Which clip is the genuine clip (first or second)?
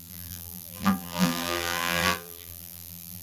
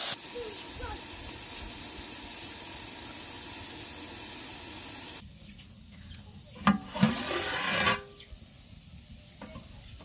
second